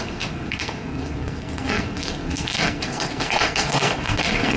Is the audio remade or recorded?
remade